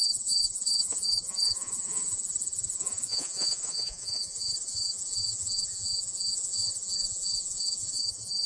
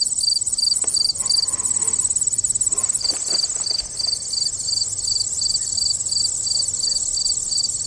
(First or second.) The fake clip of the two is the first